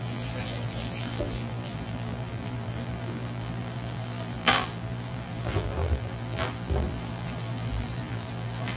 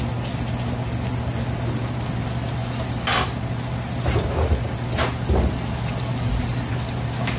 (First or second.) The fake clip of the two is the first